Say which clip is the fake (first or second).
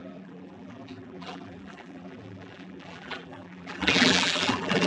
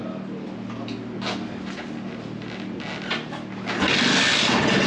first